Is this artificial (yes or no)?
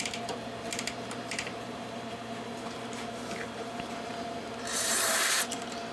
yes